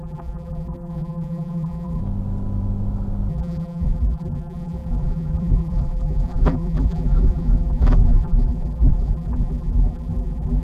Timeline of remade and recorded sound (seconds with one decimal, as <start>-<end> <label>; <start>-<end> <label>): 0.0-2.0 remade; 2.0-3.3 recorded; 3.3-10.6 remade